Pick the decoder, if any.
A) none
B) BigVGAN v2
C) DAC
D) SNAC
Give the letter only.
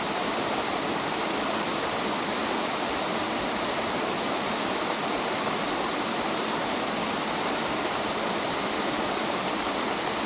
B